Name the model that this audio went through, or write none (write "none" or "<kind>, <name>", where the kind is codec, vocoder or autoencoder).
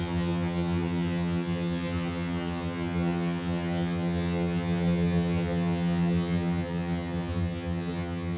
vocoder, HiFi-GAN